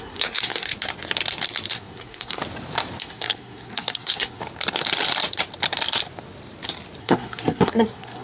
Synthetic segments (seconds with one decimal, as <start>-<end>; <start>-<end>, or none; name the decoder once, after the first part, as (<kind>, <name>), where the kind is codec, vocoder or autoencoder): 0.0-0.7 (codec, SNAC); 1.7-2.4; 3.0-4.4; 7.0-8.2